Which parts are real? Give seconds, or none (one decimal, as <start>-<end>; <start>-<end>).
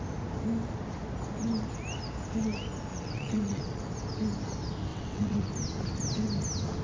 0.0-2.9; 3.8-4.9; 5.5-6.8